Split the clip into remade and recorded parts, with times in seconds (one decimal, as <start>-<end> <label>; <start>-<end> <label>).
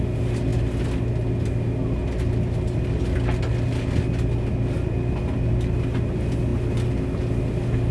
0.0-7.9 recorded